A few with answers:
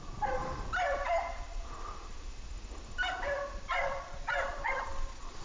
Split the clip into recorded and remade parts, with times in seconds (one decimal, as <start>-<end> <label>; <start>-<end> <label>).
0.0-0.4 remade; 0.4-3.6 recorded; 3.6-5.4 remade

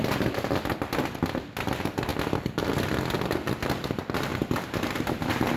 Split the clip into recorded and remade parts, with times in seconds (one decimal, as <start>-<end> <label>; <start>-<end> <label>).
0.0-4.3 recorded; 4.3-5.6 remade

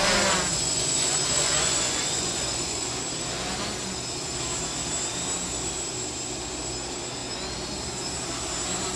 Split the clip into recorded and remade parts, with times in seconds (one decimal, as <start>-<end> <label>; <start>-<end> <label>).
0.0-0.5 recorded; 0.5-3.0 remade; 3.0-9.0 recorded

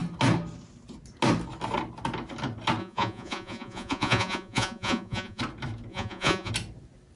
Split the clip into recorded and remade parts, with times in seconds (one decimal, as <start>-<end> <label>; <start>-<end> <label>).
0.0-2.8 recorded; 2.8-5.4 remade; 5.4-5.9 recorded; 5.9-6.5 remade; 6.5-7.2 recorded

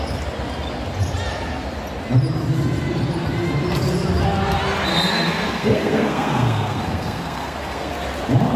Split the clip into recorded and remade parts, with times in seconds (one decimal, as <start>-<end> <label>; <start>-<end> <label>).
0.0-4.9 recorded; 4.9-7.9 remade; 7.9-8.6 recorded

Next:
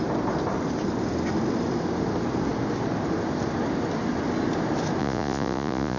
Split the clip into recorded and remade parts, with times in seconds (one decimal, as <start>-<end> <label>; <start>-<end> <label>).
0.0-5.0 recorded; 5.0-6.0 remade